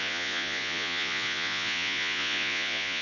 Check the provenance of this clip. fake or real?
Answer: fake